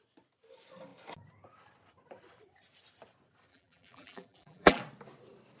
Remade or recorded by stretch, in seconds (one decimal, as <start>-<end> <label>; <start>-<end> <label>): 0.0-3.5 recorded; 3.5-4.8 remade; 4.8-5.6 recorded